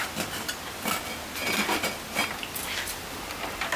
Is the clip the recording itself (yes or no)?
yes